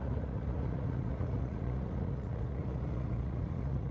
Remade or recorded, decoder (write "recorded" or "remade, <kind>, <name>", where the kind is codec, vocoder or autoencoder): remade, vocoder, Vocos